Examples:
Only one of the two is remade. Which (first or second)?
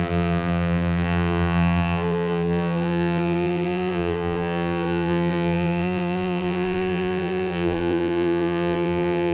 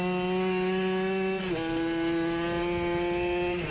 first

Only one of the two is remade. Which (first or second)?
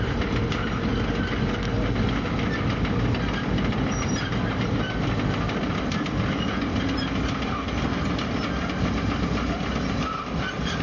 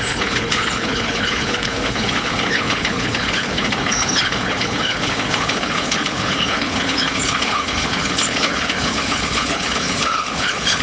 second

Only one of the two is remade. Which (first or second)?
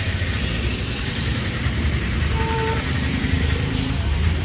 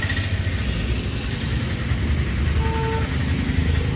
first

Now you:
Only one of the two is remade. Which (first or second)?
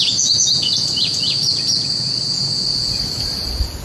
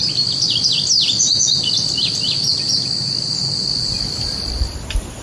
first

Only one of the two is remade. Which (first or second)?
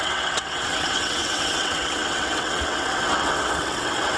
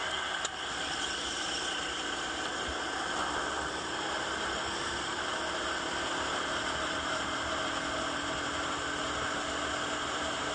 first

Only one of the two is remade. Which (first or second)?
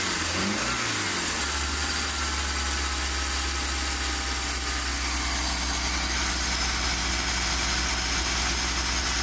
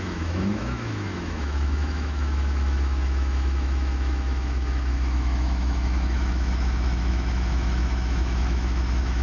second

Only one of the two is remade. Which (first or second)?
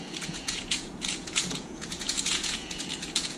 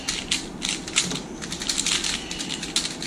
first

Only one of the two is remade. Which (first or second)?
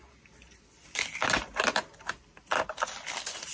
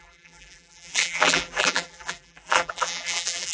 second